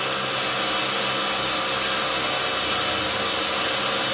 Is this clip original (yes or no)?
yes